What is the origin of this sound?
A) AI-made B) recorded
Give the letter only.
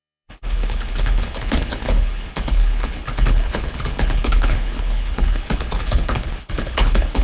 A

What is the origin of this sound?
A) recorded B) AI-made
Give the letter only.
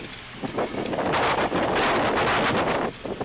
A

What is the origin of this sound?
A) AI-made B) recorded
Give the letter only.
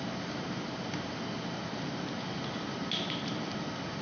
B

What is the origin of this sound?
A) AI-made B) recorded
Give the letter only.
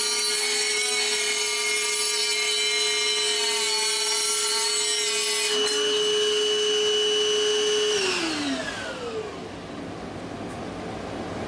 B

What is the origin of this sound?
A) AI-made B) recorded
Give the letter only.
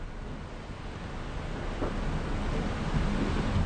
B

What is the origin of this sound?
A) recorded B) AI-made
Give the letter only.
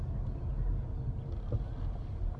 A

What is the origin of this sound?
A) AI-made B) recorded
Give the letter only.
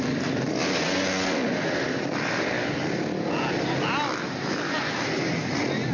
B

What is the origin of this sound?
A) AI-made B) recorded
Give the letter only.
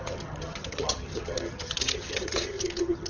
A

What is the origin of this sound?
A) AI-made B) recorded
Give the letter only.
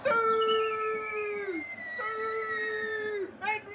B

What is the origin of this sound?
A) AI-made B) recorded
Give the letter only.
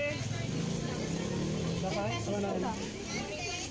B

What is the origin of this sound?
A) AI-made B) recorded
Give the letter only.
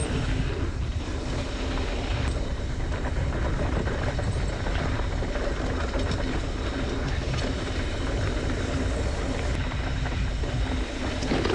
B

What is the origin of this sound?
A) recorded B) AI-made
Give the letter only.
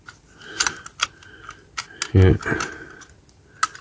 A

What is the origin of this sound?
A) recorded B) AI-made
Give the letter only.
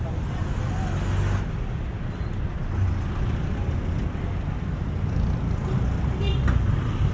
A